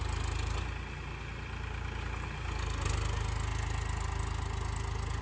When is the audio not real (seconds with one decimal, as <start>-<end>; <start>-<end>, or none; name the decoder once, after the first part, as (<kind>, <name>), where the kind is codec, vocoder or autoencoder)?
none